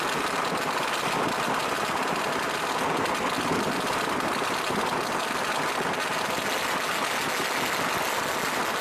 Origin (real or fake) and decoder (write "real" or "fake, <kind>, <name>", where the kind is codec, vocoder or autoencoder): real